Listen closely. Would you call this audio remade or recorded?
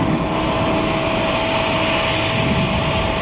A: recorded